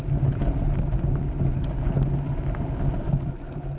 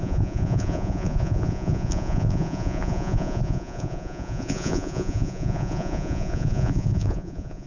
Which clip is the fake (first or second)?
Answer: second